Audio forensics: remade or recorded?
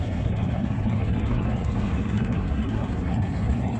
remade